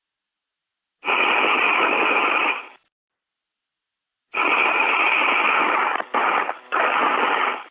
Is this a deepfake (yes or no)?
no